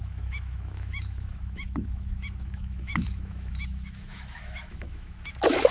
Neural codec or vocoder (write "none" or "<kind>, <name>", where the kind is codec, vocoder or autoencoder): autoencoder, DAC-VAE